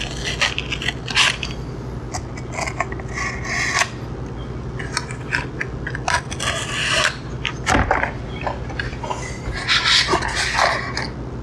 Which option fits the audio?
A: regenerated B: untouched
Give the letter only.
B